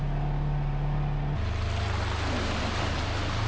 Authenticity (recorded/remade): recorded